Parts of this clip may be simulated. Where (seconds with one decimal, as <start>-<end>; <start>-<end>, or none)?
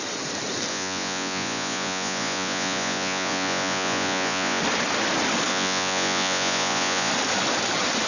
0.7-4.6; 5.5-7.1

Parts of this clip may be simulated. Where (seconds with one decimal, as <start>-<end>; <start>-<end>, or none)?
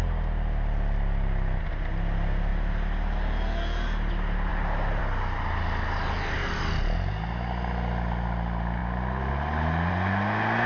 none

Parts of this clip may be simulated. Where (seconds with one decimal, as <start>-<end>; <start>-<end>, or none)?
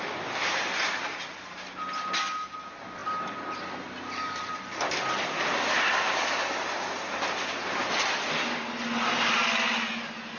none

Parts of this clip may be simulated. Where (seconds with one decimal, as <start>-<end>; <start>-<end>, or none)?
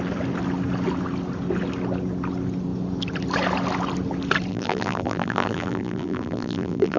4.5-7.0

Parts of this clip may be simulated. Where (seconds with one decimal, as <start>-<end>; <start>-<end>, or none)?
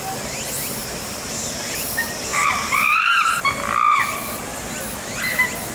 0.8-1.3; 2.3-3.4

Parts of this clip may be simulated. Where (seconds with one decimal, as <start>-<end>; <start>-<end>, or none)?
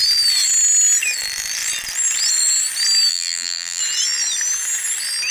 3.1-3.8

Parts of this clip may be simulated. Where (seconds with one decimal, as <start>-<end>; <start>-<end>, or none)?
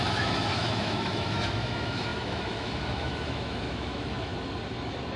0.0-4.3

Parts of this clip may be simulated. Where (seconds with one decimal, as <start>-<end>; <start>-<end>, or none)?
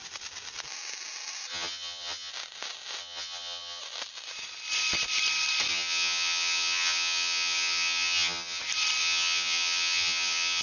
1.5-2.3; 3.0-3.8; 5.7-8.6; 9.0-10.6